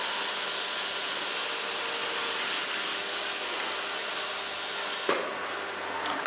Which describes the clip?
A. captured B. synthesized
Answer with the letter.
A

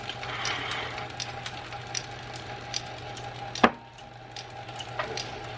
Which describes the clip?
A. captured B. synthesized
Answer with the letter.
A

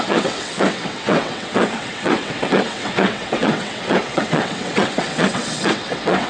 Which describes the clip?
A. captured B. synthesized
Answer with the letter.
B